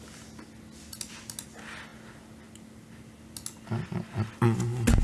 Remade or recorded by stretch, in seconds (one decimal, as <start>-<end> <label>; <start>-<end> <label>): 0.0-5.0 recorded